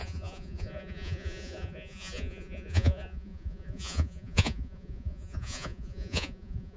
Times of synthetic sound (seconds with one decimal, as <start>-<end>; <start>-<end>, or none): 0.0-6.8

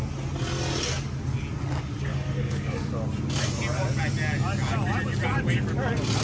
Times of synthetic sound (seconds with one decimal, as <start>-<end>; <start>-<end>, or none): 2.1-2.9